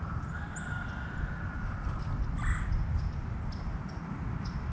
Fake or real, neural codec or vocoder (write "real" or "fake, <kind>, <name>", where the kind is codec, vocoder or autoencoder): real